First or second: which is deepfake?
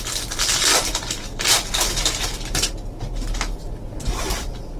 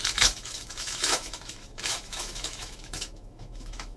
second